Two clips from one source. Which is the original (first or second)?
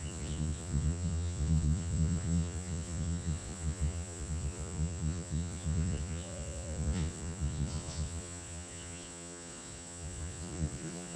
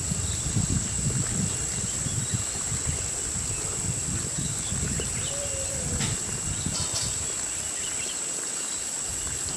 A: second